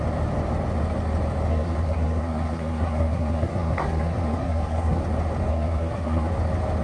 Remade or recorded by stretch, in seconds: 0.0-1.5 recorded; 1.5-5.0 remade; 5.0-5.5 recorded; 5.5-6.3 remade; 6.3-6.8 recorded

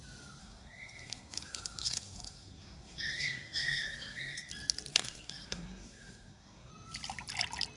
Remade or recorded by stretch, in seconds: 0.0-0.4 recorded; 0.4-4.5 remade; 4.5-4.9 recorded; 4.9-6.7 remade; 6.7-7.8 recorded

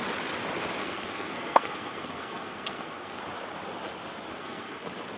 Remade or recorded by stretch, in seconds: 0.0-0.8 recorded; 0.8-3.2 remade; 3.2-4.3 recorded; 4.3-4.8 remade; 4.8-5.2 recorded

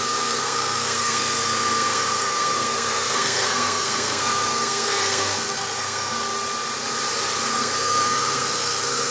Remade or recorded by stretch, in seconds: 0.0-6.2 remade; 6.2-7.5 recorded; 7.5-9.1 remade

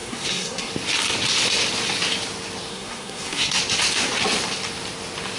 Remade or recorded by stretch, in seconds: 0.0-0.7 remade; 0.7-2.7 recorded; 2.7-3.6 remade; 3.6-5.4 recorded

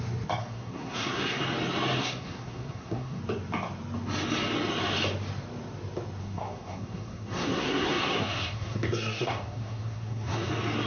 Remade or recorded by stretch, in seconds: 0.0-0.4 recorded; 0.4-1.4 remade; 1.4-2.0 recorded; 2.0-3.2 remade; 3.2-6.2 recorded; 6.2-10.5 remade; 10.5-10.9 recorded